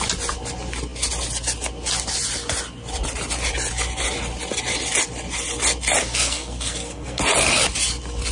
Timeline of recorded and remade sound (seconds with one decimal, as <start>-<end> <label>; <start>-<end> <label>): 0.0-6.0 recorded; 6.0-7.2 remade; 7.2-8.3 recorded